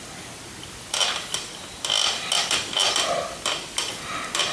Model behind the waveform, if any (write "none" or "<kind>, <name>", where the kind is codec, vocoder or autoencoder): none